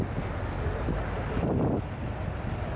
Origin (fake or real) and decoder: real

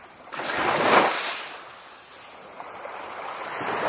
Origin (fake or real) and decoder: real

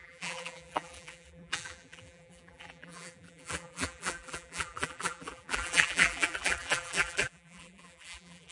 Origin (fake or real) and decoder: fake, vocoder, BigVGAN v2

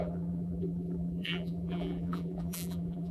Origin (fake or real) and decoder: fake, vocoder, BigVGAN v2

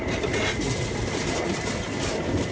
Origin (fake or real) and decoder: real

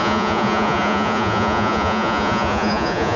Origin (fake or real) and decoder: fake, vocoder, Vocos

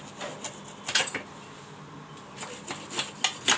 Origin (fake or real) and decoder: real